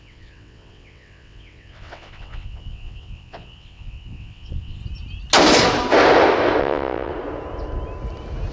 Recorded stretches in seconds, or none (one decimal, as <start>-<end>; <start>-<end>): 4.8-6.6; 7.1-8.5

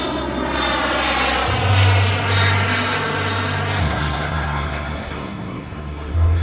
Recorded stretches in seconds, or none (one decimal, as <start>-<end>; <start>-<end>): 0.0-3.8

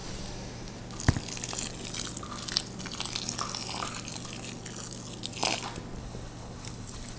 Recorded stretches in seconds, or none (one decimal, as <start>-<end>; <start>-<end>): 0.0-6.0